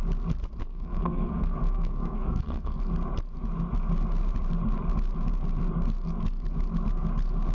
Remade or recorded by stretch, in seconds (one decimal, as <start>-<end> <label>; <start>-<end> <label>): 0.0-0.6 recorded; 0.6-2.8 remade; 2.8-7.5 recorded